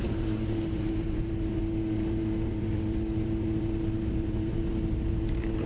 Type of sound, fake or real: fake